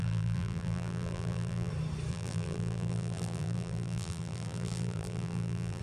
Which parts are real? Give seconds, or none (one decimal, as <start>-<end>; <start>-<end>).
1.7-2.1